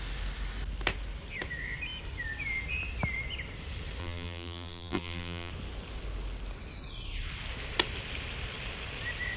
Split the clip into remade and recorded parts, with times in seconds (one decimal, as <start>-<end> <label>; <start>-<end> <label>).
0.0-4.0 recorded; 4.0-5.5 remade; 5.5-9.4 recorded